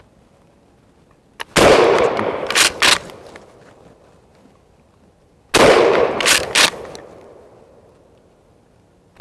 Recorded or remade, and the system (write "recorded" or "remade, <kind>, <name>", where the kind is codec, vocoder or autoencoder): recorded